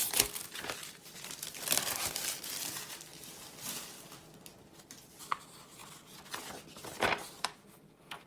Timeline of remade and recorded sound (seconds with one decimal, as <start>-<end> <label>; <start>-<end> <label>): 0.0-8.3 recorded